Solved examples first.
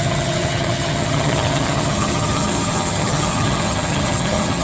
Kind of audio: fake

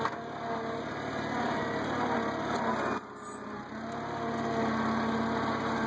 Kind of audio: real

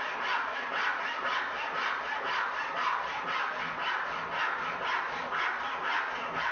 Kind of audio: real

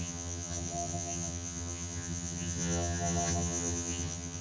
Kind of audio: fake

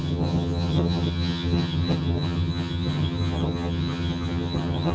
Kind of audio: fake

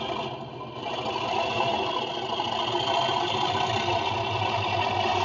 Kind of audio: real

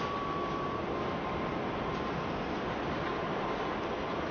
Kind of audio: real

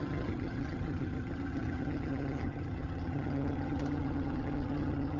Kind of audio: fake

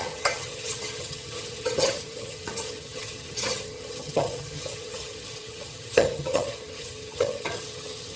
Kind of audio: fake